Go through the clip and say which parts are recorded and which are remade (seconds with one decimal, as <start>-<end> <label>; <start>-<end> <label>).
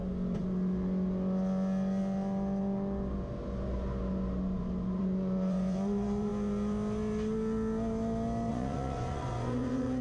0.0-5.0 recorded; 5.0-6.3 remade; 6.3-8.5 recorded; 8.5-10.0 remade